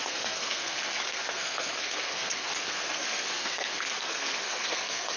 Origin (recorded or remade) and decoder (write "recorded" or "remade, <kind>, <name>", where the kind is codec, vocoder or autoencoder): remade, codec, SNAC